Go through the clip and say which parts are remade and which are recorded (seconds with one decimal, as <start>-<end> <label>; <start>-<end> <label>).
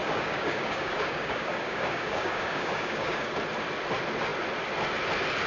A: 0.0-3.3 remade; 3.3-5.5 recorded